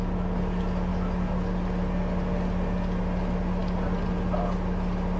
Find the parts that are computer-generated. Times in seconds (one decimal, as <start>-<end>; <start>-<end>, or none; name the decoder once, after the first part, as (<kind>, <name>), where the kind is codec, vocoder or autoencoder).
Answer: none